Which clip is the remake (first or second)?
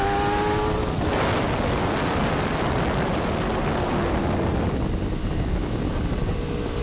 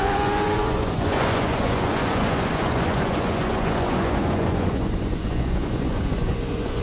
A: second